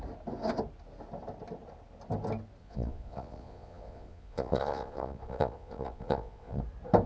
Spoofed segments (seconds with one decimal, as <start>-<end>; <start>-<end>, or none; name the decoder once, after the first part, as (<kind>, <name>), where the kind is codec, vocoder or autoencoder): 2.6-6.6 (vocoder, Vocos)